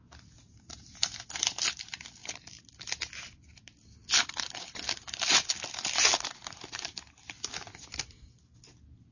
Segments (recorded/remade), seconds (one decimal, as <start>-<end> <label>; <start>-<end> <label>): 0.0-9.1 recorded